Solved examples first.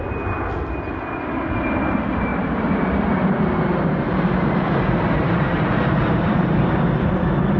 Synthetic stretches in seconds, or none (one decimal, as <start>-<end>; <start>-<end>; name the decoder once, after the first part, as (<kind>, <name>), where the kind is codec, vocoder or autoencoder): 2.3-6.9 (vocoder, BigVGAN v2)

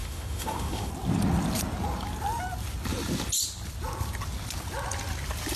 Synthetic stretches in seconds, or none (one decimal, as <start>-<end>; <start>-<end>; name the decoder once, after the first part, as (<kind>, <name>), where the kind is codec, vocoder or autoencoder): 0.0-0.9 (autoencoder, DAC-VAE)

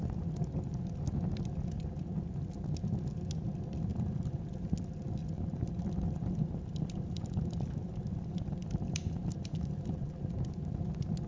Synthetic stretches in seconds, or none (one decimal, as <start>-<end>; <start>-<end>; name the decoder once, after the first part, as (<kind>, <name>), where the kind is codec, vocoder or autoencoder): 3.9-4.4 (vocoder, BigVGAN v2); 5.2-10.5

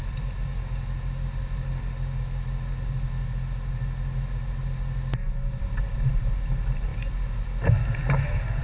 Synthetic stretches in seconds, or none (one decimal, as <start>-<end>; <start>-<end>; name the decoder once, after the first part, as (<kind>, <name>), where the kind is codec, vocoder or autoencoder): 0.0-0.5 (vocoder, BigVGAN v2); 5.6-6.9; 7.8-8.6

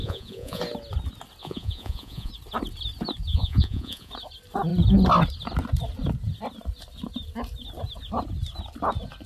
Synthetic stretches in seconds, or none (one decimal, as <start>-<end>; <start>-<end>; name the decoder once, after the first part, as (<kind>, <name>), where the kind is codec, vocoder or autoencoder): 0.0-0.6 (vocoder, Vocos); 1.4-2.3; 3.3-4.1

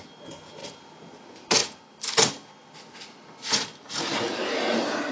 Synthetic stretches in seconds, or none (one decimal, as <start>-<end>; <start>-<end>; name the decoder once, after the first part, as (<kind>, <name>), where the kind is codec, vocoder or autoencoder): none

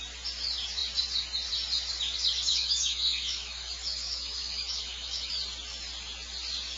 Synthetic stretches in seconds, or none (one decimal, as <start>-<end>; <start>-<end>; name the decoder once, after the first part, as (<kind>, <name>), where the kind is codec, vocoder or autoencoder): 2.5-5.3 (autoencoder, DAC-VAE)